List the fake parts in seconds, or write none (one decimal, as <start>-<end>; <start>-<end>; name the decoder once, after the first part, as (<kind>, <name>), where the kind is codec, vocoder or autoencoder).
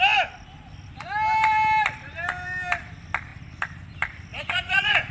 4.3-5.1 (vocoder, Vocos)